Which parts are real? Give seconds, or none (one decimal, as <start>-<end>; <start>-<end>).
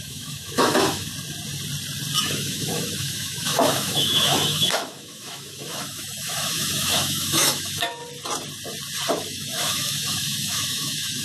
1.1-2.2; 8.0-9.1